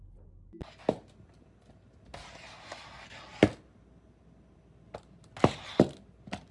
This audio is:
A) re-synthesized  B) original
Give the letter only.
B